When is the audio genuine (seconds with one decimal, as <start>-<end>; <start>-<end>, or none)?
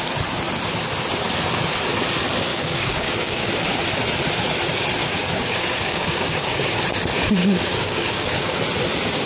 0.0-2.5; 3.5-5.0; 6.8-7.4; 8.6-9.3